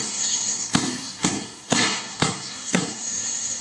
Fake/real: fake